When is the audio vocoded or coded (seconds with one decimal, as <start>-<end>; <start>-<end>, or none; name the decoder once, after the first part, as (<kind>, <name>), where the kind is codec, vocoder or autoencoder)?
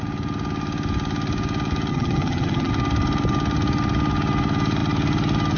1.9-2.7 (vocoder, HiFi-GAN)